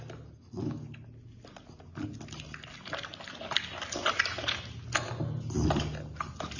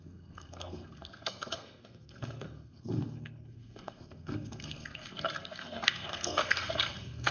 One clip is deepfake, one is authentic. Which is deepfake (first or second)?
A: second